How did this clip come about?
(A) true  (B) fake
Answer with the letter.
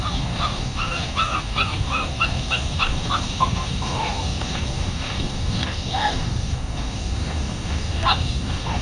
B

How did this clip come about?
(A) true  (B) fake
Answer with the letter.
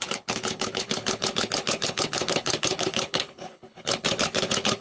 B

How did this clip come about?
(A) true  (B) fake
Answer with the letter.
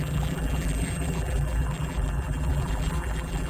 B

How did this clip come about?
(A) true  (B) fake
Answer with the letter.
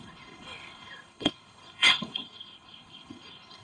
B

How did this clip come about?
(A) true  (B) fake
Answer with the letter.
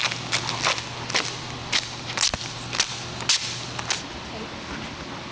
A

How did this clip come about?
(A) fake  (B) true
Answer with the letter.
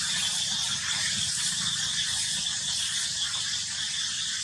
B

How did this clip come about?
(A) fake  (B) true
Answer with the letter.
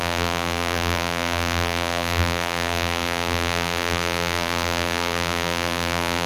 A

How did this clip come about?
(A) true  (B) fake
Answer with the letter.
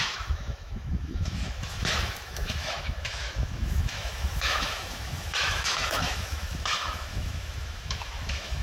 B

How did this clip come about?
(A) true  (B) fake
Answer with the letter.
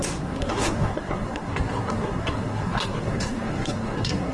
B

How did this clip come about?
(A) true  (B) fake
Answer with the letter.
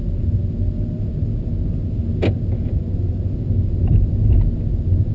A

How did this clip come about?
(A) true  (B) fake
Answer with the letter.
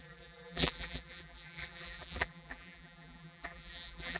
B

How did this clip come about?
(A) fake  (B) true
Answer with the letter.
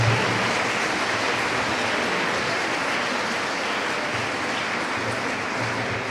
B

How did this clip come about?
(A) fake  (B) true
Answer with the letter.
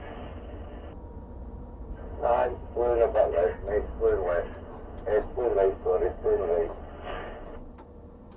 B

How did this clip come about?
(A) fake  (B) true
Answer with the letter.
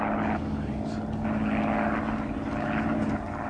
B